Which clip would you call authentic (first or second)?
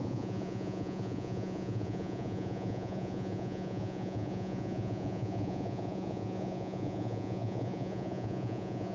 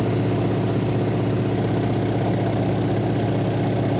second